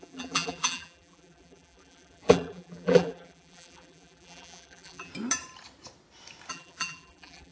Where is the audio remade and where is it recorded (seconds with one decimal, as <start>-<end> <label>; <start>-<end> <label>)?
0.0-5.1 remade; 5.1-6.5 recorded; 6.5-7.5 remade